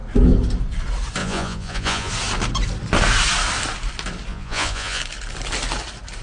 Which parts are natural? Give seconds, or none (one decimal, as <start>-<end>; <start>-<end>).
0.0-1.2; 2.1-4.3; 5.0-6.2